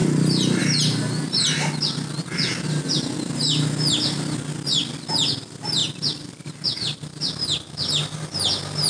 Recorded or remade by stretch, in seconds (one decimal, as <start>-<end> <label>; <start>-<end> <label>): 0.0-5.8 recorded; 5.8-7.9 remade; 7.9-8.9 recorded